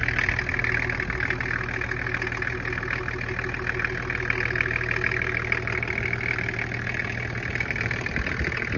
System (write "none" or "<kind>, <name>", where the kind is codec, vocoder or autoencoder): none